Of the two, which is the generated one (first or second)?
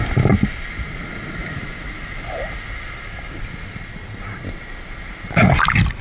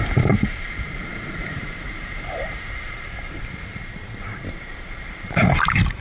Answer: second